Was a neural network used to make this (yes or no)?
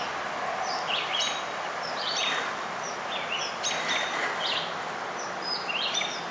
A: no